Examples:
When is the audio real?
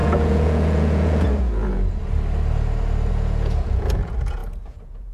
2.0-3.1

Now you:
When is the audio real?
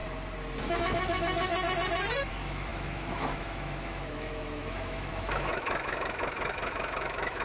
0.0-0.6; 1.5-2.3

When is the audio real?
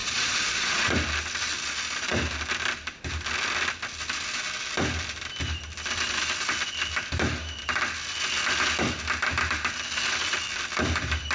0.9-11.3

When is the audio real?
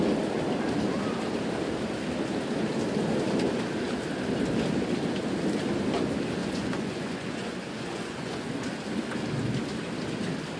0.0-6.4; 8.5-10.6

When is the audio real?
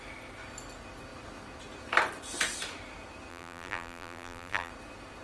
0.0-3.3; 4.7-5.2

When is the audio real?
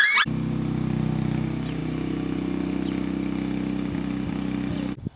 0.0-5.2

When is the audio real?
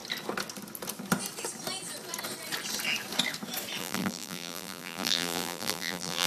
0.0-3.8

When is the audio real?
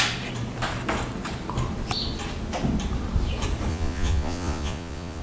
0.0-3.7